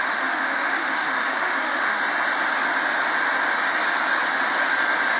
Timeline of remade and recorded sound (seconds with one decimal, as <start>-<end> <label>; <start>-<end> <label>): 0.0-2.0 remade; 2.0-5.2 recorded